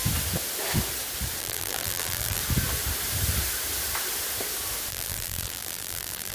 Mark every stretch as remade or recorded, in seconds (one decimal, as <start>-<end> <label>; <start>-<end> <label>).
0.0-1.4 recorded; 1.4-2.4 remade; 2.4-4.9 recorded; 4.9-6.3 remade